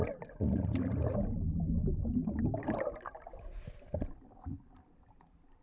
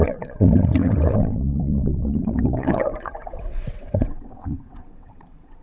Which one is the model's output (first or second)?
second